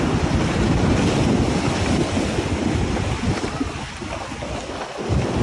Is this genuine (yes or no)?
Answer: yes